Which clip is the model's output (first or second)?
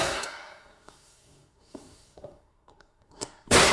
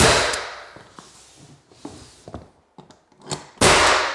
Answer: first